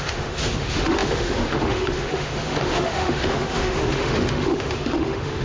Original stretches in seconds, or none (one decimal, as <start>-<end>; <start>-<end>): none